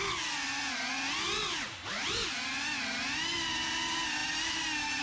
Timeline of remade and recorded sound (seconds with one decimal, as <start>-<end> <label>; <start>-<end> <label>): 0.0-5.0 recorded

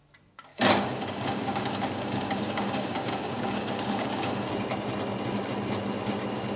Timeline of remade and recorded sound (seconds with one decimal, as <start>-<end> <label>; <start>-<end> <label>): 0.0-0.5 recorded; 0.5-4.5 remade; 4.5-6.6 recorded

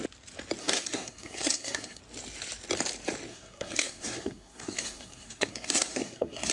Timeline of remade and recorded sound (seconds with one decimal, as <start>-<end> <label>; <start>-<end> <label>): 0.0-0.6 recorded; 0.6-2.0 remade; 2.0-3.3 recorded; 3.3-6.5 remade

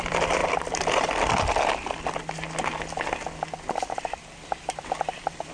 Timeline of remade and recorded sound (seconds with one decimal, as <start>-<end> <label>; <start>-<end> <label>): 0.0-0.4 remade; 0.4-3.7 recorded; 3.7-5.5 remade

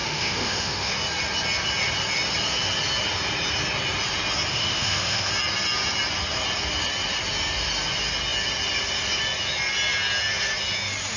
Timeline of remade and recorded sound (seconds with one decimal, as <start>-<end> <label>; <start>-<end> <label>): 0.0-0.9 remade; 0.9-4.5 recorded; 4.5-5.3 remade; 5.3-11.2 recorded

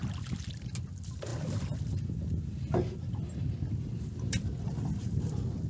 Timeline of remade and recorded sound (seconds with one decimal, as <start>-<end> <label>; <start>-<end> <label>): 0.0-5.7 recorded